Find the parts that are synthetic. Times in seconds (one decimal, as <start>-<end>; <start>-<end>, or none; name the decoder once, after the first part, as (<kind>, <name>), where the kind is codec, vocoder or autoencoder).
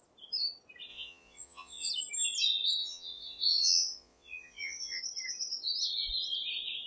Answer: 0.9-1.9 (vocoder, Vocos); 2.8-5.0